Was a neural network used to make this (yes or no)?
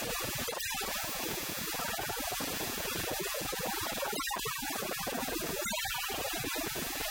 yes